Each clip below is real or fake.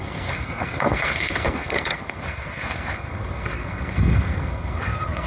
fake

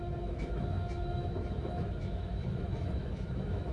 fake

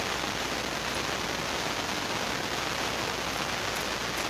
real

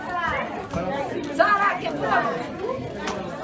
real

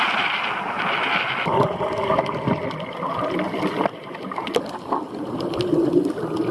real